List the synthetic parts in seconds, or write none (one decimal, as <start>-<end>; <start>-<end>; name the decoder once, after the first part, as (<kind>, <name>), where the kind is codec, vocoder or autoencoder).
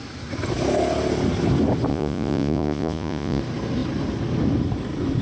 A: 1.9-3.4 (vocoder, Vocos)